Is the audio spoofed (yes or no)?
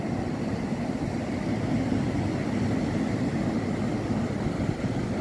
no